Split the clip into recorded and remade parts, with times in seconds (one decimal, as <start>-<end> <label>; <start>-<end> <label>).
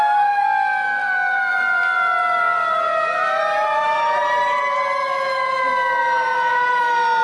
0.0-1.0 recorded; 1.0-5.3 remade; 5.3-6.0 recorded; 6.0-6.8 remade; 6.8-7.2 recorded